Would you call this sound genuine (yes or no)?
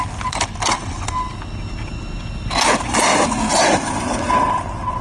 yes